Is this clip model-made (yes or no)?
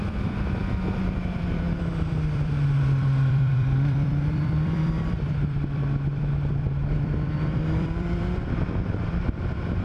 yes